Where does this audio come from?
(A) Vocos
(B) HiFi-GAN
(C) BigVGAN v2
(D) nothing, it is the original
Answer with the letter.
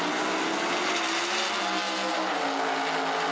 D